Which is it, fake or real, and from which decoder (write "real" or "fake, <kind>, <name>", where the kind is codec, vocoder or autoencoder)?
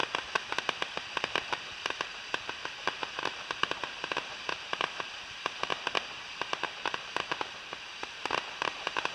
fake, vocoder, BigVGAN v2